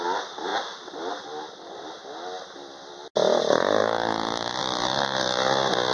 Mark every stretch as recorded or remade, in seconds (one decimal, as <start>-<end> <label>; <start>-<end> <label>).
0.0-5.9 recorded